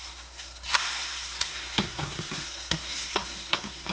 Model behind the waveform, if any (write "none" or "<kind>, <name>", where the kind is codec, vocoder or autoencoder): codec, SNAC